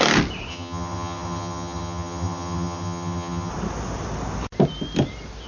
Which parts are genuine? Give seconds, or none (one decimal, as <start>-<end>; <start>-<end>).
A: 0.0-0.5; 3.5-5.5